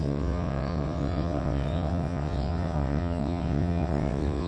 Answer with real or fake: fake